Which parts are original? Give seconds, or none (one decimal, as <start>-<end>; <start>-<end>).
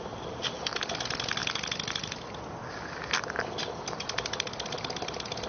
0.0-5.5